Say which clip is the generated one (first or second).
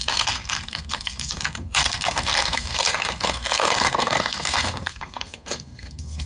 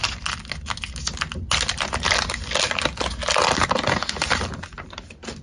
first